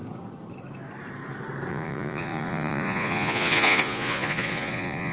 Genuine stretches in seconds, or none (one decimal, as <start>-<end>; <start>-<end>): 0.0-1.7

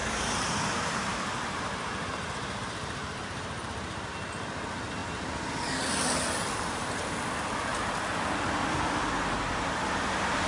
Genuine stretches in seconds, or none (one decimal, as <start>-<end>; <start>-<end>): 4.1-7.7; 8.5-10.5

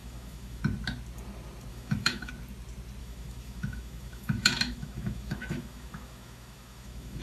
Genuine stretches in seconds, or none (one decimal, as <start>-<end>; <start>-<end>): 0.6-1.7; 2.3-3.0

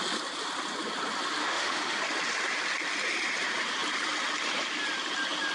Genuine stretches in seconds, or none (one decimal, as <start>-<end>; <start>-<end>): 0.0-1.4; 2.0-5.5

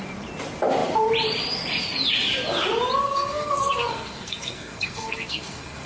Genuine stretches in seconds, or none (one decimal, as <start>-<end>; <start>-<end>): 0.0-3.0

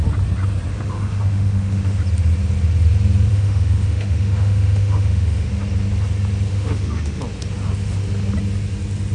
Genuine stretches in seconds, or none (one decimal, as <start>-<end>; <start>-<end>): 0.0-0.7; 2.0-3.3; 5.5-6.5; 7.2-9.1

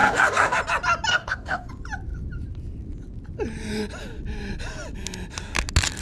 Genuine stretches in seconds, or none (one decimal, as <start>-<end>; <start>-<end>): 0.6-1.1; 1.7-6.0